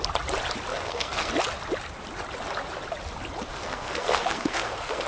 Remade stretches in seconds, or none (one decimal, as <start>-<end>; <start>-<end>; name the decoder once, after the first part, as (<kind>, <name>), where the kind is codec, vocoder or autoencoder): 0.7-1.3 (codec, SNAC); 3.5-5.1